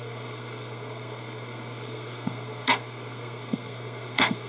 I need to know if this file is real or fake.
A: fake